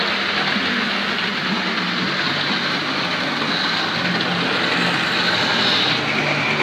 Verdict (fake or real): real